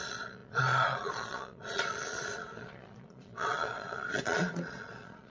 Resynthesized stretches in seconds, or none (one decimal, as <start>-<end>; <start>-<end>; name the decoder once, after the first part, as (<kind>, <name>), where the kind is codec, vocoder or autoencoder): 0.0-5.3 (vocoder, Vocos)